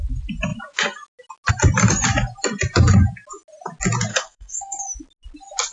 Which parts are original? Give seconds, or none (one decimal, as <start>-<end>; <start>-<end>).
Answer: 0.0-4.1; 4.8-5.7